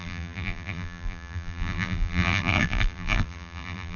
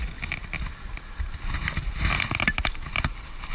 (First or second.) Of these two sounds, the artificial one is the first